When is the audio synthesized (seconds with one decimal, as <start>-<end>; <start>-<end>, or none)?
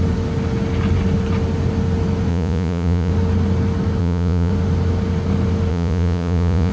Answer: 2.3-3.1; 4.0-4.5; 5.7-6.7